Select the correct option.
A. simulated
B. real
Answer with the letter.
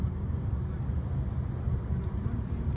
B